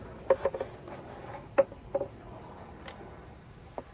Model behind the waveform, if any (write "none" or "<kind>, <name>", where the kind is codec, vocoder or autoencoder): none